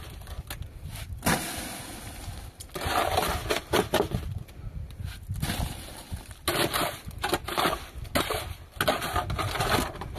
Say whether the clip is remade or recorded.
recorded